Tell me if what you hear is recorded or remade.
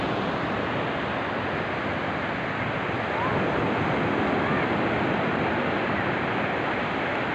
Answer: recorded